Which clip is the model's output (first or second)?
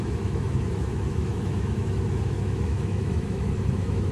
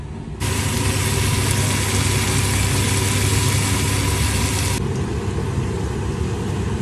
first